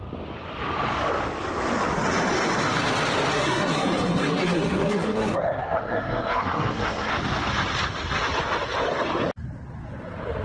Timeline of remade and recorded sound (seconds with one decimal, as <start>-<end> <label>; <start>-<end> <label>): 0.0-3.3 recorded; 3.3-7.1 remade; 7.1-10.4 recorded